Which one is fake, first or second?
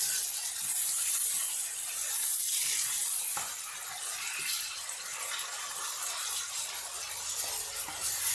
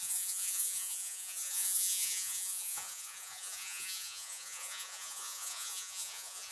second